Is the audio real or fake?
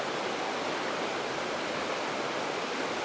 real